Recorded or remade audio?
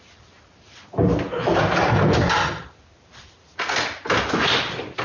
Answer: recorded